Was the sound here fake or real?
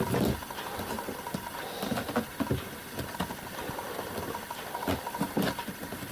real